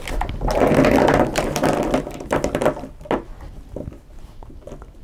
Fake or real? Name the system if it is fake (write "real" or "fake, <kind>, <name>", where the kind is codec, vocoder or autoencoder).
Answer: real